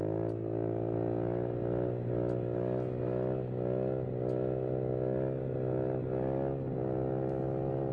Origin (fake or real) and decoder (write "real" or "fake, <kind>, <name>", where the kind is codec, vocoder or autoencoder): real